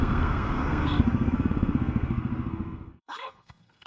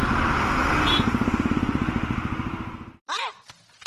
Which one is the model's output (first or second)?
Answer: first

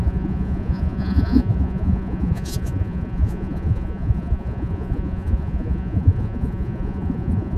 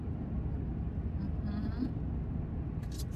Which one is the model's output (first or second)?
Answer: first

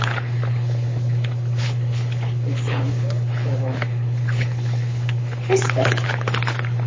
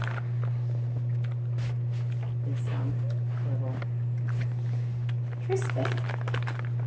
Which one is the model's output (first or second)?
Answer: first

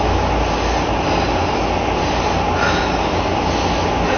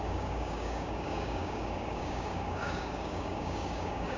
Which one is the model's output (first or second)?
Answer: second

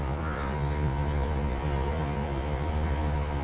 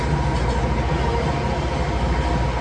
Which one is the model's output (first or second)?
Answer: first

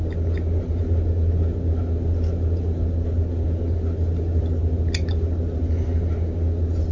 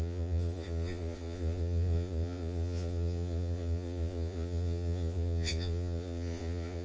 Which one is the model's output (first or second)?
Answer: second